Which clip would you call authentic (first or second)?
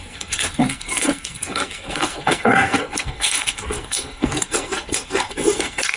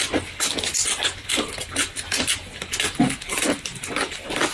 second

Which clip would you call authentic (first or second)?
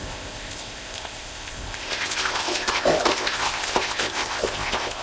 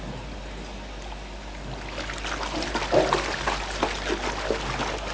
second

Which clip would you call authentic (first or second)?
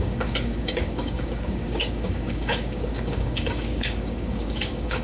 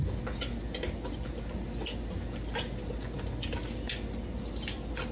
second